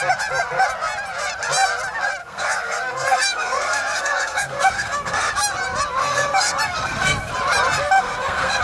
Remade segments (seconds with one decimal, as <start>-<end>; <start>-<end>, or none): 2.2-5.3; 6.0-7.3; 7.8-8.6